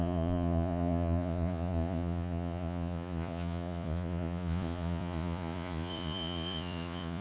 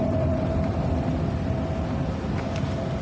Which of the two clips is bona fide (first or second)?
second